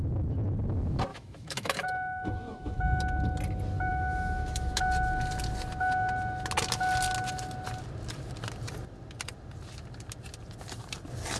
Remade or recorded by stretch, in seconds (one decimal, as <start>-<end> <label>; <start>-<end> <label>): 0.0-1.1 recorded; 1.1-2.8 remade; 2.8-3.9 recorded; 3.9-4.8 remade; 4.8-11.4 recorded